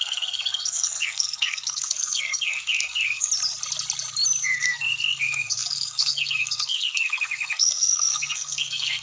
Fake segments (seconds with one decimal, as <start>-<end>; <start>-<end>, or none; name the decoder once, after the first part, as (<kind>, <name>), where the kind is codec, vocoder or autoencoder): 0.0-3.3 (codec, SNAC); 4.4-9.0